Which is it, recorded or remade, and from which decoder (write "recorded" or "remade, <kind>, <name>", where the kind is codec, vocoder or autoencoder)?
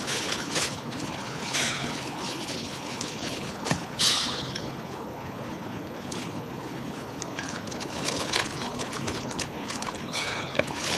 remade, codec, HILCodec